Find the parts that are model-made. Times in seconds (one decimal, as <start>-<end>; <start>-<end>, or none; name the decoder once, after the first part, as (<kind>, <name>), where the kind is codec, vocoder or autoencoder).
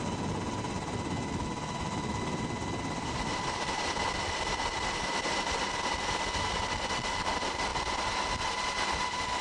none